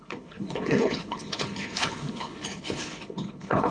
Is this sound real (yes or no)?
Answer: no